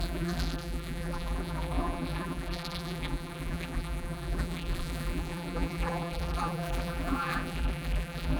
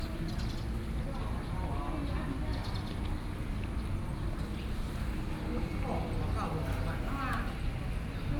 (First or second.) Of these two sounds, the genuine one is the second